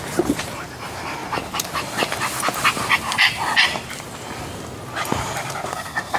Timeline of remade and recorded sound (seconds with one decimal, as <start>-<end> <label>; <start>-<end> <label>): 0.0-5.7 recorded; 5.7-6.2 remade